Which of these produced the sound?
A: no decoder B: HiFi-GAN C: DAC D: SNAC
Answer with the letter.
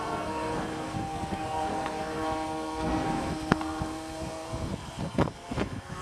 D